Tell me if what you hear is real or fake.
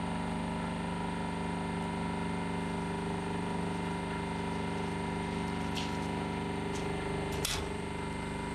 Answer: real